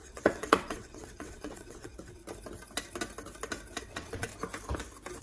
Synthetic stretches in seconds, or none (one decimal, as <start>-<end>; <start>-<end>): 0.0-2.2; 3.8-4.3